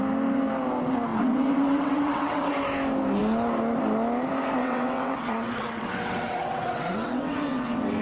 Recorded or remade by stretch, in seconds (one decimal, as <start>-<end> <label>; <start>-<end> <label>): 0.0-1.1 recorded; 1.1-2.5 remade; 2.5-4.6 recorded; 4.6-8.0 remade